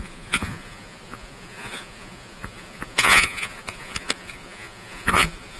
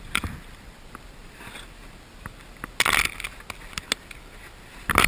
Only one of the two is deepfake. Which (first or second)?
first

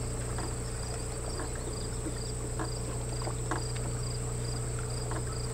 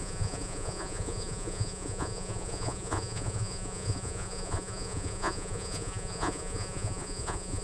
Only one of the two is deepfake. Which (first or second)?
second